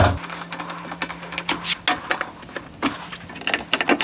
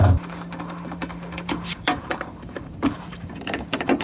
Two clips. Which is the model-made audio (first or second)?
second